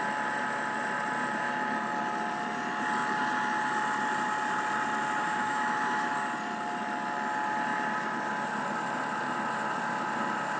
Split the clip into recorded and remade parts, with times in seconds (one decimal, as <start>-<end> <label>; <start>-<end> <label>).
0.0-5.2 recorded; 5.2-6.1 remade; 6.1-10.6 recorded